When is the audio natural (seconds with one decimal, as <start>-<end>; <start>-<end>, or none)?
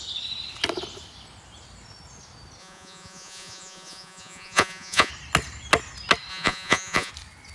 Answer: 0.0-2.6; 5.1-6.3; 7.1-7.5